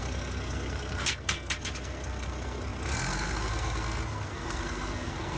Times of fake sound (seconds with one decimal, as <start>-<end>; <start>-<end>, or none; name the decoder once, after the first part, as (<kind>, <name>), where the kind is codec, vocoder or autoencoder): 0.0-5.4 (codec, SNAC)